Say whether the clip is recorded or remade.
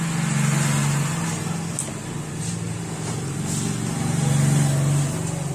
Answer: recorded